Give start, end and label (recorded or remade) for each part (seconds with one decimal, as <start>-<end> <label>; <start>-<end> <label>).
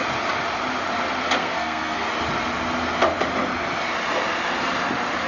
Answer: 0.0-1.4 recorded; 1.4-2.1 remade; 2.1-5.3 recorded